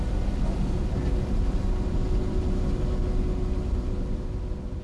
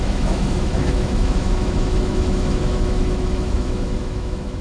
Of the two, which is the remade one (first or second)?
second